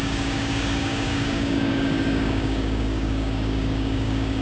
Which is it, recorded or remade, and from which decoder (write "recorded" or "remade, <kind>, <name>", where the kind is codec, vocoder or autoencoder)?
remade, codec, DAC